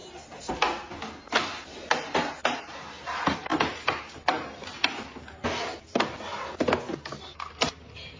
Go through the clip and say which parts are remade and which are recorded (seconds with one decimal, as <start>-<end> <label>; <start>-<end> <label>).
0.0-8.2 recorded